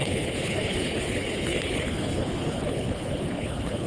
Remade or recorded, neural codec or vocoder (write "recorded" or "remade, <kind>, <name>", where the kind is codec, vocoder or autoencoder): remade, codec, HILCodec